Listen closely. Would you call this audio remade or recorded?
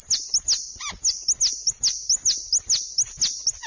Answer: recorded